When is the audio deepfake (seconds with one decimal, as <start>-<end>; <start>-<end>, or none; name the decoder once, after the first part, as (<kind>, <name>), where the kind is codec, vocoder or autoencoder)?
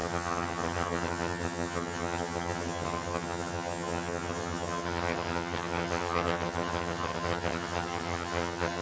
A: 0.0-8.8 (vocoder, HiFi-GAN)